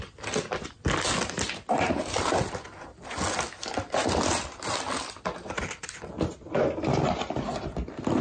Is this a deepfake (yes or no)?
no